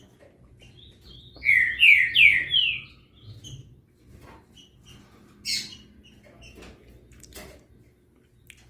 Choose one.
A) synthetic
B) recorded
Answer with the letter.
B